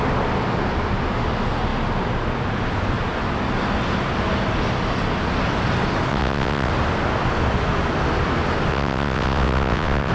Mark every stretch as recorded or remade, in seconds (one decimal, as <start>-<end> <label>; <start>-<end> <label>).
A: 0.0-6.1 recorded; 6.1-6.7 remade; 6.7-8.7 recorded; 8.7-10.1 remade